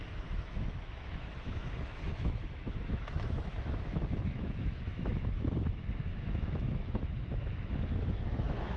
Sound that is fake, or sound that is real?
fake